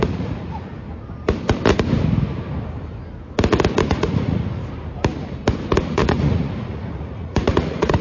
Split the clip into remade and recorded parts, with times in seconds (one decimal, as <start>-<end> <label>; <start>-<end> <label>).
0.0-0.7 remade; 0.7-3.9 recorded; 3.9-4.6 remade; 4.6-5.8 recorded; 5.8-8.0 remade

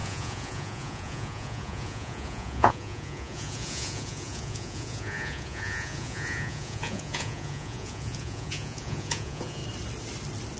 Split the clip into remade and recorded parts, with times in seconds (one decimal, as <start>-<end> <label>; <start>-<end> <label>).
0.0-9.6 remade; 9.6-10.6 recorded

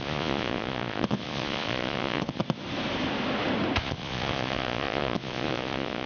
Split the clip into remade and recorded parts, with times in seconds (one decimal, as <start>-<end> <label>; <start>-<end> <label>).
0.0-2.4 remade; 2.4-3.8 recorded; 3.8-6.1 remade

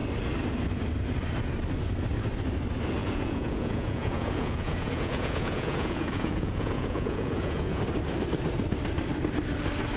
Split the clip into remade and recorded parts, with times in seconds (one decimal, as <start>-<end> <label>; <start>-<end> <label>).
0.0-3.0 recorded; 3.0-7.8 remade; 7.8-10.0 recorded

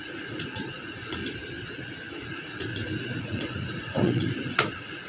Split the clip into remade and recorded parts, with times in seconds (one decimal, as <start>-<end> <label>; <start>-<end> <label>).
0.0-1.2 remade; 1.2-2.1 recorded; 2.1-2.7 remade; 2.7-3.2 recorded; 3.2-5.1 remade

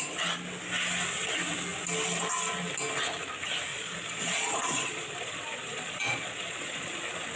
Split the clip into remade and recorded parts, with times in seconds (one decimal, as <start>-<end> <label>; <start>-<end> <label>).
0.0-3.7 recorded; 3.7-7.0 remade; 7.0-7.4 recorded